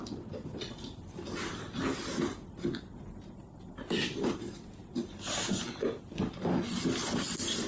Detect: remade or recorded recorded